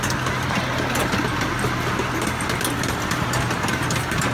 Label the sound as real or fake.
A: real